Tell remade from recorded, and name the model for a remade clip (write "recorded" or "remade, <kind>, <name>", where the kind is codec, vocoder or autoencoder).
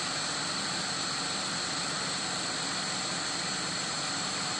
remade, vocoder, BigVGAN v2